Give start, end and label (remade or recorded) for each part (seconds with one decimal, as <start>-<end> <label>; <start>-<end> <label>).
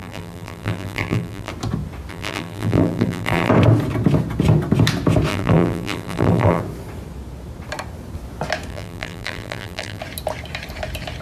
0.0-1.5 remade; 1.5-2.1 recorded; 2.1-3.5 remade; 3.5-5.3 recorded; 5.3-6.6 remade; 6.6-8.7 recorded; 8.7-10.0 remade; 10.0-11.2 recorded